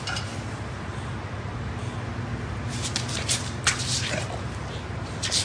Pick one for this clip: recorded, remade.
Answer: recorded